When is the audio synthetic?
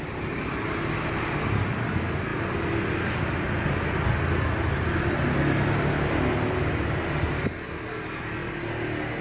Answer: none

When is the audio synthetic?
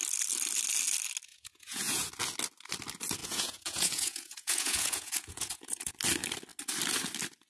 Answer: 1.3-2.1 (vocoder, Vocos); 3.2-5.9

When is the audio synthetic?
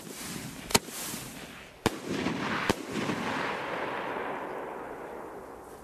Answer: none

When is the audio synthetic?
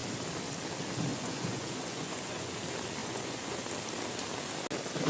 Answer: 1.1-2.6 (vocoder, Vocos); 3.0-3.7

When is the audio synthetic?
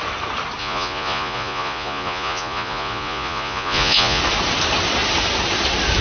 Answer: 0.6-4.2 (vocoder, Vocos)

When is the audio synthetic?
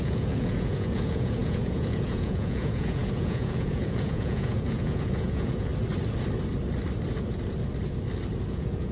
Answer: 0.0-5.7 (vocoder, Vocos); 8.5-8.9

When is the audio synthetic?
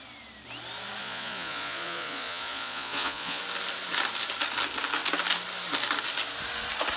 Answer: 1.0-3.4 (vocoder, Vocos)